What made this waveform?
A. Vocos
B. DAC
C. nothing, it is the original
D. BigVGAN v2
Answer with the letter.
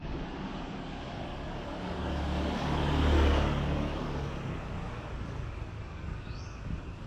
B